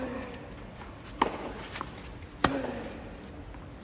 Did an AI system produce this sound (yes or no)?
no